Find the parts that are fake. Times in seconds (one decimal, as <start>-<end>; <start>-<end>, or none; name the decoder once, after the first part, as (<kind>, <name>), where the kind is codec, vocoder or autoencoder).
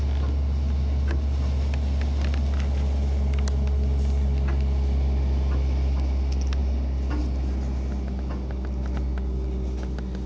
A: none